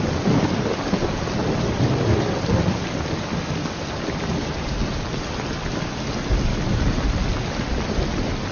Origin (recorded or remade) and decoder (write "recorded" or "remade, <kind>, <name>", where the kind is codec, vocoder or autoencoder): recorded